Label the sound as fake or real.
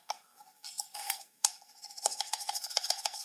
fake